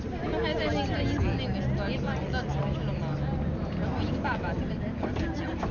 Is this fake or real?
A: real